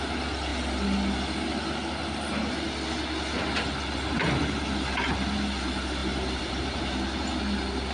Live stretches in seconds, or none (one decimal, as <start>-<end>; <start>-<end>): 0.0-6.0; 6.8-7.9